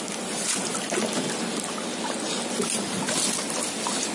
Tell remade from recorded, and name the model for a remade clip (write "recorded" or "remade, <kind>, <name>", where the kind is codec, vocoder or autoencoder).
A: recorded